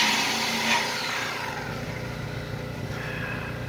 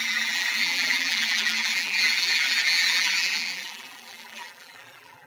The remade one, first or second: second